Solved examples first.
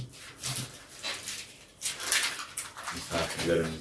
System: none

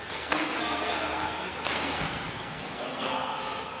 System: codec, SNAC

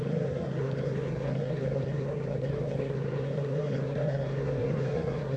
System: codec, SNAC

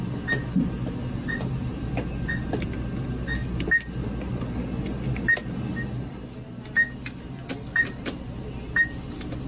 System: none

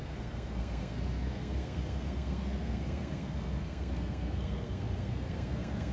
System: codec, SNAC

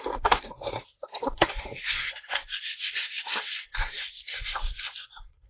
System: codec, SNAC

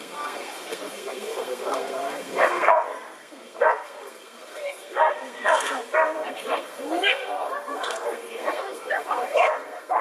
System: codec, SNAC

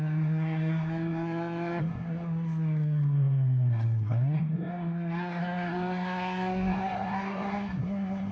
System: codec, SNAC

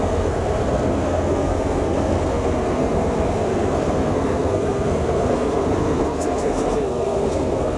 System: codec, SNAC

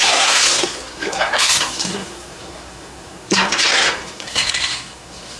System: codec, SNAC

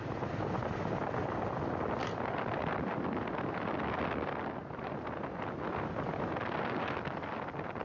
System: none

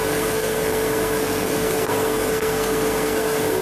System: codec, SNAC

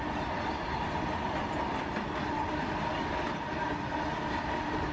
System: none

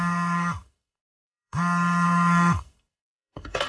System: codec, SNAC